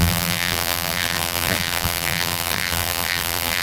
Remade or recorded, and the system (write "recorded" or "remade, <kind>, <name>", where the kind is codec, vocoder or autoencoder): remade, vocoder, BigVGAN v2